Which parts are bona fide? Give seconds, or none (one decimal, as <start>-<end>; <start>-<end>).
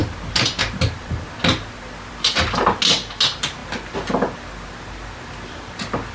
0.0-6.1